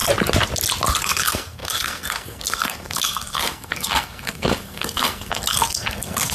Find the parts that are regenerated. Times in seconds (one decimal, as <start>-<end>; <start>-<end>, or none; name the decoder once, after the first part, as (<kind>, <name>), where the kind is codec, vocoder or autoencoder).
1.0-6.3 (codec, SNAC)